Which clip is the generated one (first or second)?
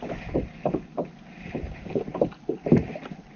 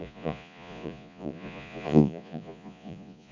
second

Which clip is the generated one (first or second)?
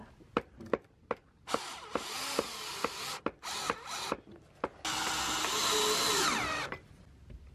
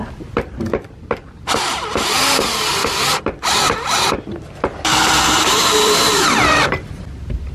second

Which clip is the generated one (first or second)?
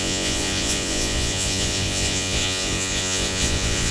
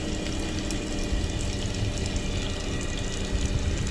first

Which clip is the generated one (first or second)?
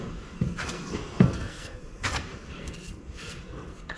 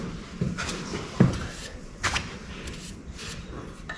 first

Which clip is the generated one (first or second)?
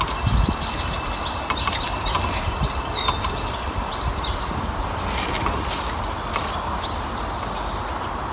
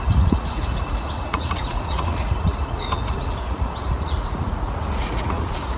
second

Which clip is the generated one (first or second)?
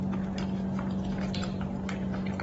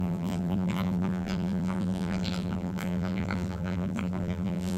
second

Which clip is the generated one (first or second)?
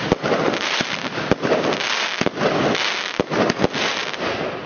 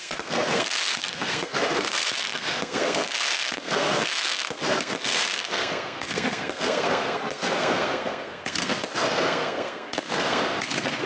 second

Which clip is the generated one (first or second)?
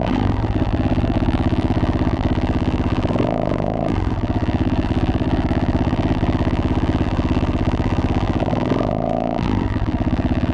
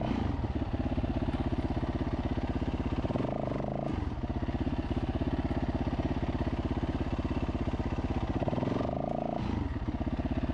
first